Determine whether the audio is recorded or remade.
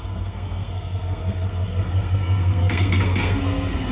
remade